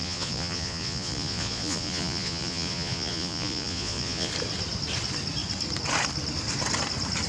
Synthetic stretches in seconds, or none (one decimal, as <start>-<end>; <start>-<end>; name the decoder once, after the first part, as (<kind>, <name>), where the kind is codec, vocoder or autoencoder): 0.0-4.3 (vocoder, Vocos)